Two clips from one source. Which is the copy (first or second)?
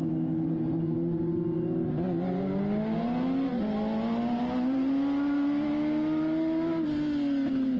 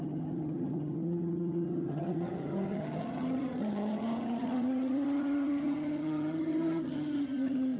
second